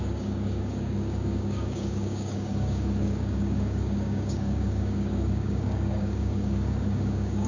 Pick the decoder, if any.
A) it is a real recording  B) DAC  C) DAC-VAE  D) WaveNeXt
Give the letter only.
B